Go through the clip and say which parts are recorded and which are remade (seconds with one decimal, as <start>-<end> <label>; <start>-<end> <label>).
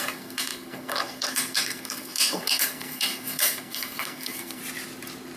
0.0-4.6 remade; 4.6-5.4 recorded